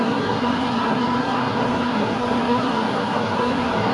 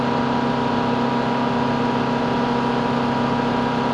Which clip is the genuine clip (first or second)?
second